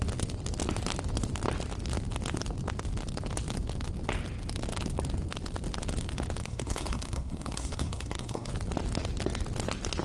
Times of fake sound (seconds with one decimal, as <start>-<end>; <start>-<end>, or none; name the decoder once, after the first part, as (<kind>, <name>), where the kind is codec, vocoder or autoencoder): 6.4-8.5 (codec, SNAC)